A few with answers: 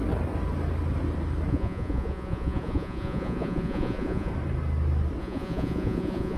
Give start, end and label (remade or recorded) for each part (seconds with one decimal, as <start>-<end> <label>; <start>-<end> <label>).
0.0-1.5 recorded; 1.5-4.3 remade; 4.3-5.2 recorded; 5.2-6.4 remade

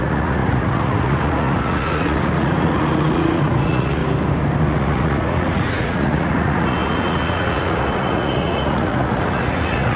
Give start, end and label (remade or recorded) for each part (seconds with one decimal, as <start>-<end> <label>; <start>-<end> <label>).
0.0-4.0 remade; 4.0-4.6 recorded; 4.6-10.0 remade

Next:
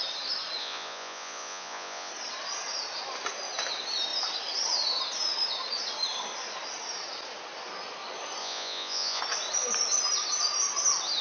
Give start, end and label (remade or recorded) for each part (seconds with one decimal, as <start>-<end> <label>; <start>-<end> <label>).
0.0-0.6 recorded; 0.6-2.1 remade; 2.1-8.4 recorded; 8.4-9.2 remade; 9.2-11.2 recorded

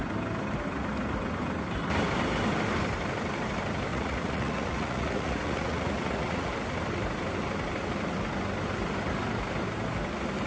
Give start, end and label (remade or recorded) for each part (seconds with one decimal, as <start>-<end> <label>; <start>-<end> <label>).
0.0-3.9 recorded; 3.9-6.5 remade; 6.5-10.5 recorded